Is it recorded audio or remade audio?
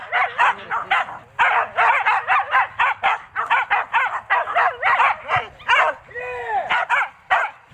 recorded